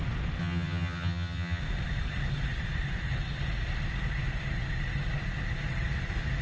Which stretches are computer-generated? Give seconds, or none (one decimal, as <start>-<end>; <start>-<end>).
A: 0.4-1.6